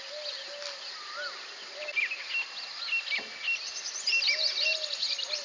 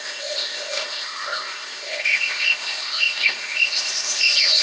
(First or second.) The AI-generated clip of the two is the second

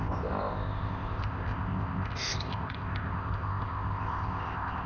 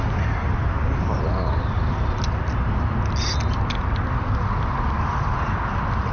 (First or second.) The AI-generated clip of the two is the first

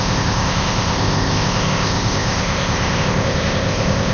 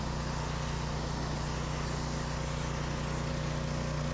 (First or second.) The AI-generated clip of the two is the first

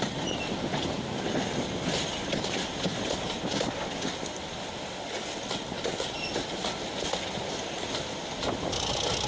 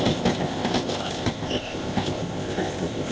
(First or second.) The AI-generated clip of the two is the second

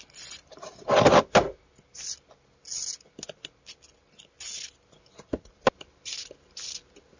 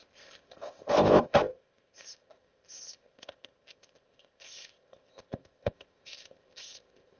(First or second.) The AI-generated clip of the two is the second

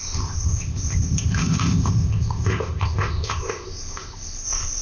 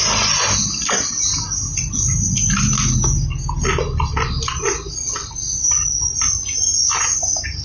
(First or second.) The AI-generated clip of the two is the first